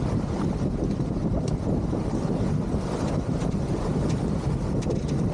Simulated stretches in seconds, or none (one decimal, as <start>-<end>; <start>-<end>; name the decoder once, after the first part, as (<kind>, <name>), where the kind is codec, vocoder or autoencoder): none